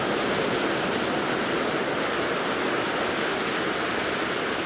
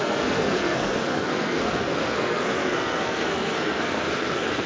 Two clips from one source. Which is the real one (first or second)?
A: first